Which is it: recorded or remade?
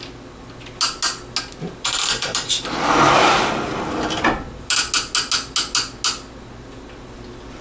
recorded